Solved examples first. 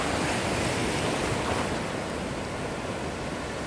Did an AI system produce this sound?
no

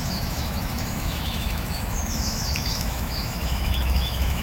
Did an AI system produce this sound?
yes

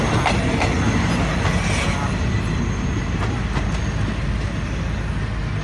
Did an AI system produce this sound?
no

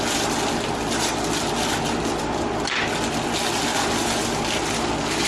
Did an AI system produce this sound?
no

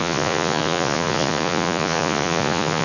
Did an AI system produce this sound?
yes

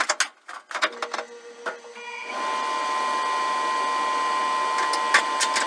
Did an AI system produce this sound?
no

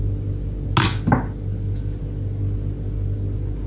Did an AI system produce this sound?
no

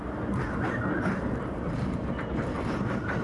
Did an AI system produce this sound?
no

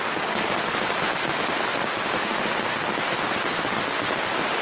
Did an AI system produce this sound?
no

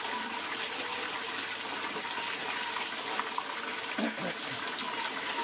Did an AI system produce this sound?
no